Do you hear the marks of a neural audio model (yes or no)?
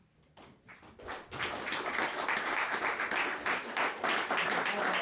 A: no